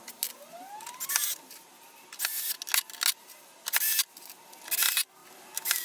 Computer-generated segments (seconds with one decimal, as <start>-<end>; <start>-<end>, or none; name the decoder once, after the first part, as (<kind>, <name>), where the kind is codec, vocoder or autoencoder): none